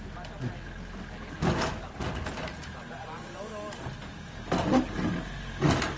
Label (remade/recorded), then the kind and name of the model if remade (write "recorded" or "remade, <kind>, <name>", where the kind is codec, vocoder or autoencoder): recorded